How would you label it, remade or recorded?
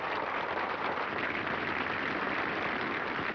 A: recorded